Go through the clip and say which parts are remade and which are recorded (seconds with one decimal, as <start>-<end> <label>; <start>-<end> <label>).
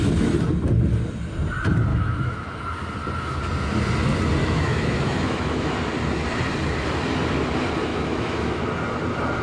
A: 0.0-1.9 recorded; 1.9-2.6 remade; 2.6-4.4 recorded; 4.4-5.8 remade; 5.8-7.9 recorded; 7.9-8.6 remade; 8.6-9.4 recorded